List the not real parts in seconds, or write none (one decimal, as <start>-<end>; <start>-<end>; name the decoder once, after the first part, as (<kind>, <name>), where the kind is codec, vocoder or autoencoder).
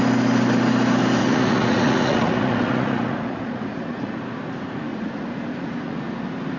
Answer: 1.2-4.2 (vocoder, Vocos); 4.9-6.0